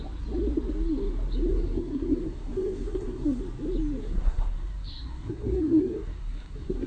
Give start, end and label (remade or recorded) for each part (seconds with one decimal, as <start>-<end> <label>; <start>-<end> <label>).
0.0-1.5 recorded; 1.5-3.4 remade; 3.4-4.0 recorded; 4.0-6.9 remade